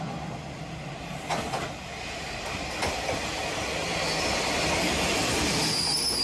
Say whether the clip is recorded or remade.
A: recorded